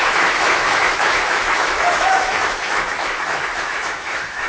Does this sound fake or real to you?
fake